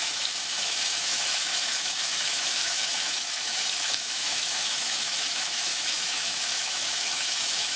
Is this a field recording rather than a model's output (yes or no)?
no